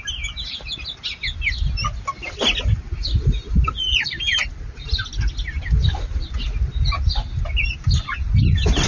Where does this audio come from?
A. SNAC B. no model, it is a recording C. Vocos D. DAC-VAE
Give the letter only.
B